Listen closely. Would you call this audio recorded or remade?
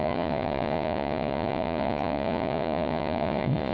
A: remade